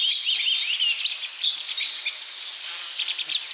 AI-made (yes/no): no